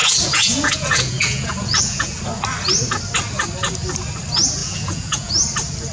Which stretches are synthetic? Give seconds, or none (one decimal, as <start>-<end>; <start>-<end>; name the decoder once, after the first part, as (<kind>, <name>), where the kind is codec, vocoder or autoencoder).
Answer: 0.0-2.2 (vocoder, Vocos); 4.6-5.3